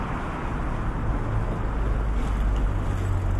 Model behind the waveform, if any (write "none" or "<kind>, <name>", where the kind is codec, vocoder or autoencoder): none